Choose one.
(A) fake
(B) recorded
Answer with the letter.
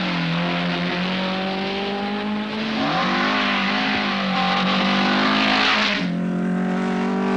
B